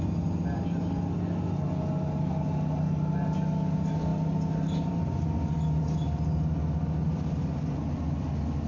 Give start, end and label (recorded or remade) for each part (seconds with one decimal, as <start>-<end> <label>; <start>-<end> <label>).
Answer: 0.0-8.7 recorded